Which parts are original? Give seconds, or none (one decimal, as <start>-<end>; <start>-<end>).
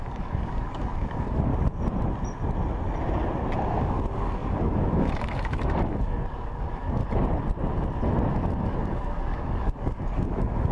1.5-3.8; 7.0-8.3